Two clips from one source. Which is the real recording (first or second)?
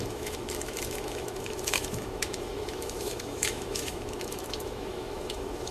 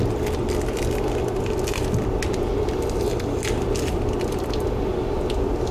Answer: second